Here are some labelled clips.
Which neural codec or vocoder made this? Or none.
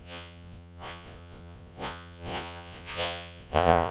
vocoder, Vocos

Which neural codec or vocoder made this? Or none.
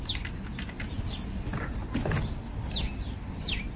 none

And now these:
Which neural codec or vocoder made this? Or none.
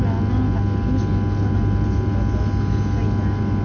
none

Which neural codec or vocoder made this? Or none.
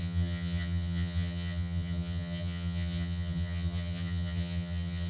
vocoder, HiFi-GAN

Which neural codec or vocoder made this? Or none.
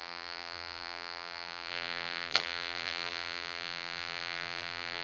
vocoder, BigVGAN v2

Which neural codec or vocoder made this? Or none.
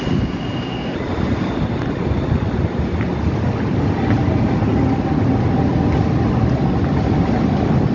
none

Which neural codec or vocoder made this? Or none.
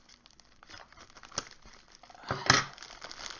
none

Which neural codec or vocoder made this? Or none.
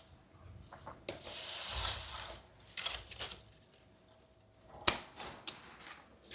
none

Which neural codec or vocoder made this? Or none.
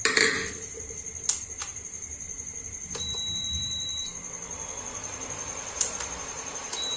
vocoder, BigVGAN v2